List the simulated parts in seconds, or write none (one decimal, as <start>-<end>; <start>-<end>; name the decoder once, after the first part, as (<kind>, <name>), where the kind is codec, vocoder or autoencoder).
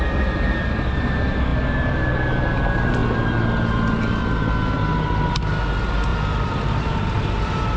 1.5-2.1 (vocoder, BigVGAN v2); 3.0-4.1; 6.1-6.9